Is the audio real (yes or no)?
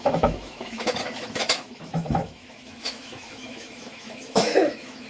no